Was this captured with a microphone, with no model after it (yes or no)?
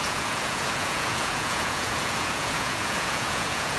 no